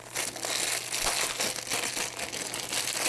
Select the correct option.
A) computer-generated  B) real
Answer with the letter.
B